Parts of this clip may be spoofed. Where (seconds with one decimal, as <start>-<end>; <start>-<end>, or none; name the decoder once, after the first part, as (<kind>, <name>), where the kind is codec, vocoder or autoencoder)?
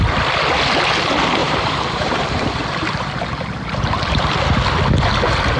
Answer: 1.4-4.1 (vocoder, BigVGAN v2)